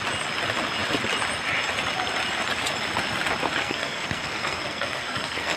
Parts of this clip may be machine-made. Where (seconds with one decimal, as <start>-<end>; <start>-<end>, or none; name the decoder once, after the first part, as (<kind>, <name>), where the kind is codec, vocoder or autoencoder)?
3.6-5.6 (codec, SNAC)